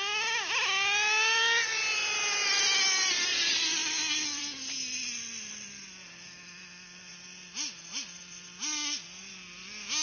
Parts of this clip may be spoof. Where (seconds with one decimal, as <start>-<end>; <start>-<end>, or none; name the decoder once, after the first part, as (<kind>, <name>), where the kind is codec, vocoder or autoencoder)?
none